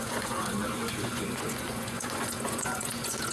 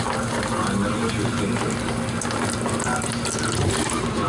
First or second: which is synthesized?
first